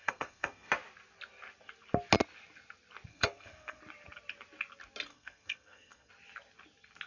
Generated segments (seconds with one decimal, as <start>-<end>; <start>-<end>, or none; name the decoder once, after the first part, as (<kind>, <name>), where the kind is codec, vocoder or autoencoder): 0.0-0.7 (codec, SNAC); 3.1-3.8; 5.1-6.1